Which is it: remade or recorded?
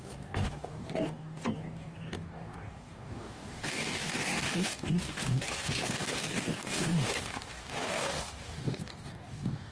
remade